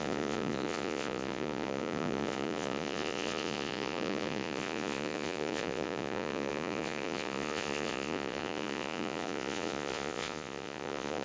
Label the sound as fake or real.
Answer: fake